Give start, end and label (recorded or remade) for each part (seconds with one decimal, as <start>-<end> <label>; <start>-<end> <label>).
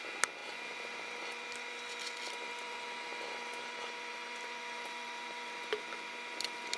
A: 0.0-6.8 remade